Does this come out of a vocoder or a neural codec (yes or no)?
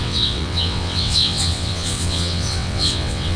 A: yes